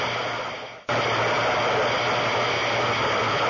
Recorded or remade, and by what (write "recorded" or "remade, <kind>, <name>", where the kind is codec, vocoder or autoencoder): recorded